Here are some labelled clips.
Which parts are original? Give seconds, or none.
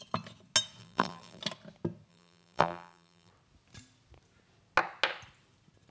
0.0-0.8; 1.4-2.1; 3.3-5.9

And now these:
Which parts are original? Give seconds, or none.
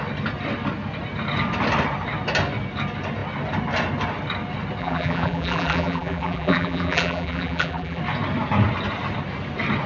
0.0-4.8; 8.0-9.9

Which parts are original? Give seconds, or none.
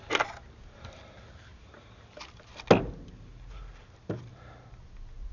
0.0-5.3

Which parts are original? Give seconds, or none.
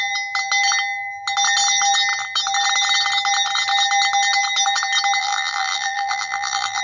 0.0-5.2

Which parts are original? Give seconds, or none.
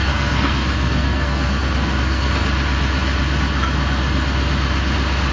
2.3-5.3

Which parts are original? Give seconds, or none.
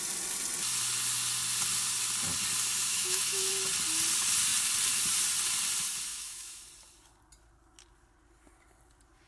0.0-2.9; 3.5-6.1; 6.6-9.3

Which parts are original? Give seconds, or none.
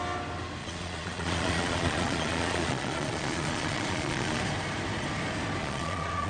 0.0-0.6; 4.4-5.6